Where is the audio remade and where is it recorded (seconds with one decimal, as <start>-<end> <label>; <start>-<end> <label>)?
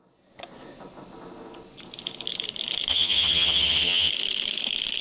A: 0.0-2.9 recorded; 2.9-4.1 remade; 4.1-5.0 recorded